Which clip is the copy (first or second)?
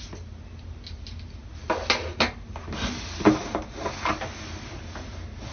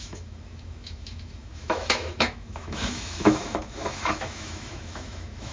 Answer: second